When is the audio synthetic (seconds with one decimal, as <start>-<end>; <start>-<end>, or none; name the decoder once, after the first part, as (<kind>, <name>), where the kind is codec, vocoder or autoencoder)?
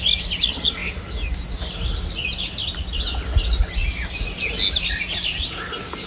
none